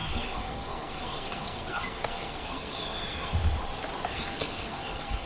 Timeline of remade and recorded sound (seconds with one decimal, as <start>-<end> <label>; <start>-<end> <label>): 0.0-3.3 remade; 3.3-4.1 recorded; 4.1-5.3 remade